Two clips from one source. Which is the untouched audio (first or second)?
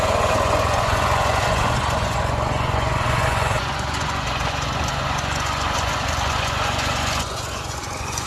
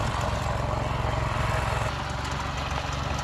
second